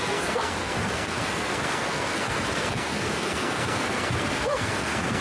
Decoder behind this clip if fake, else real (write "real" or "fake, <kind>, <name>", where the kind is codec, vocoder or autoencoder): fake, codec, SNAC